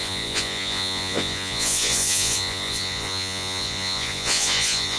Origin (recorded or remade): remade